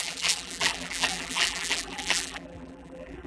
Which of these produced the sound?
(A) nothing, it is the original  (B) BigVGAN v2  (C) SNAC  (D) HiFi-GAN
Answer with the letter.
B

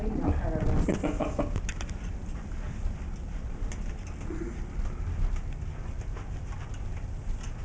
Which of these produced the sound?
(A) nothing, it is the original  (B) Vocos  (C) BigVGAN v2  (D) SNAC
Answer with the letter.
A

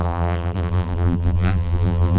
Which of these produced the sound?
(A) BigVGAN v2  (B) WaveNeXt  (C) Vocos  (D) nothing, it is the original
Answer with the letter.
A